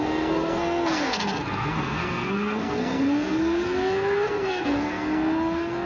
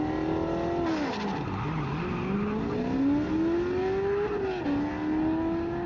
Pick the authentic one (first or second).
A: second